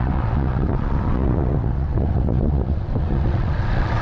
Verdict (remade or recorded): remade